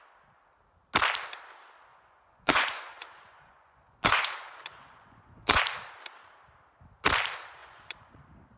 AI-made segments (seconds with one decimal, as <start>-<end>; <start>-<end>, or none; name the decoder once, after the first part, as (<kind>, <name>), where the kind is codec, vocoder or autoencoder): 1.9-5.6 (vocoder, Vocos); 7.6-8.2